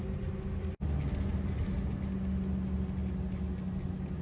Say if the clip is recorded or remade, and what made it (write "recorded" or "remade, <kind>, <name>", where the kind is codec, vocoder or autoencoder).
recorded